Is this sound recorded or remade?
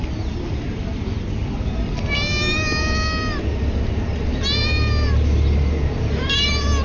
recorded